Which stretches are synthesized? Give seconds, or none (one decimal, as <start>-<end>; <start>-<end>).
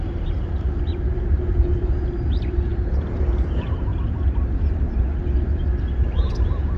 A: 0.0-3.9; 5.9-6.8